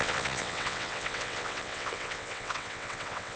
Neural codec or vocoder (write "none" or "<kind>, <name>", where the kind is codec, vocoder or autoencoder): vocoder, WaveNeXt